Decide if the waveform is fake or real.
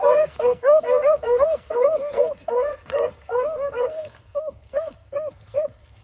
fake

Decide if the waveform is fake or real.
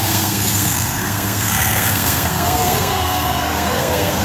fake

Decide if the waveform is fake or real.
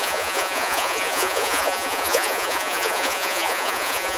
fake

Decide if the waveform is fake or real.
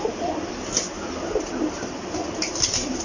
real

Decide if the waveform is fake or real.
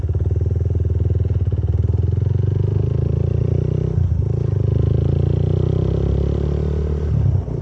real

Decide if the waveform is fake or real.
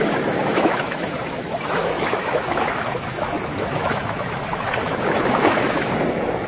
fake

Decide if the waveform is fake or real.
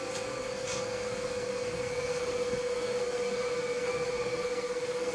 fake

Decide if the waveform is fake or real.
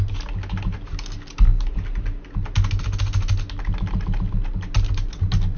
real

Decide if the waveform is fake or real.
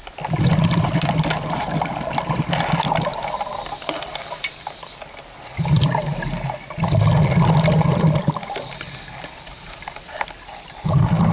real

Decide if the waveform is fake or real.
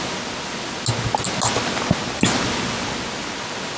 real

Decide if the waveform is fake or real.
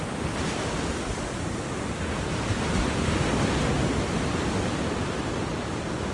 real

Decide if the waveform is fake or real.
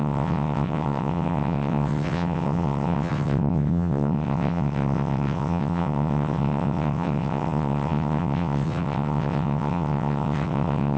fake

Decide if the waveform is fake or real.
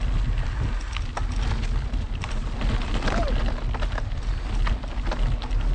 real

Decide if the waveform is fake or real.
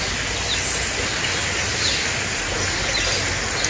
real